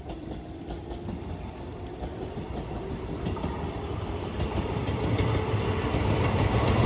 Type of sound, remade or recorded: remade